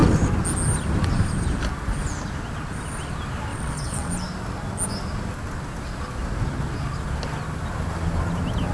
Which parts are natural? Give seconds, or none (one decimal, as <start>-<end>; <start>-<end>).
0.0-3.5; 4.1-8.7